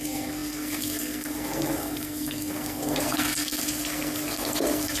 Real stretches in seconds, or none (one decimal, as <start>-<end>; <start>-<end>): none